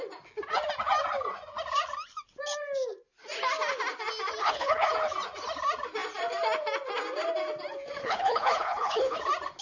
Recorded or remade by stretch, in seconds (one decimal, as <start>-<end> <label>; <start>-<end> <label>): 0.0-4.4 recorded; 4.4-4.9 remade; 4.9-8.0 recorded; 8.0-9.2 remade; 9.2-9.6 recorded